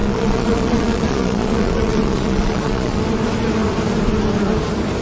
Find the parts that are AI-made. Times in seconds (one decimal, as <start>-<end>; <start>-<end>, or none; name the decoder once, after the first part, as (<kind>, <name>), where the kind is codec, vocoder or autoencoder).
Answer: 0.0-3.0 (vocoder, Vocos)